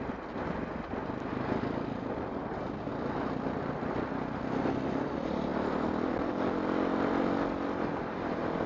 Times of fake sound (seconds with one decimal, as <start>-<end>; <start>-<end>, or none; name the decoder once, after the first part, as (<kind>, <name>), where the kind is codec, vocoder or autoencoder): none